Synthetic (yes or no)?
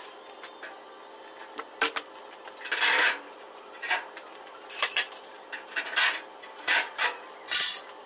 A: no